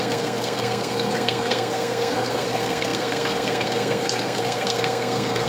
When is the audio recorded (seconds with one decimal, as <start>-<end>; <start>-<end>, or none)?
none